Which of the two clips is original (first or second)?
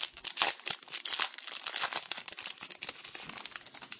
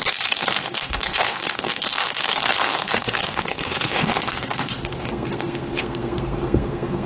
first